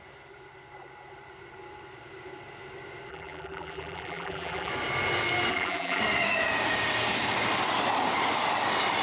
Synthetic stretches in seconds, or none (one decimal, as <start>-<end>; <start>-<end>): 3.1-4.7; 5.5-6.0